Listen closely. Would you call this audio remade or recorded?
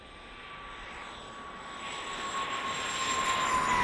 recorded